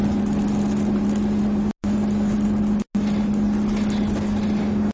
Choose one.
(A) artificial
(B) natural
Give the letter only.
B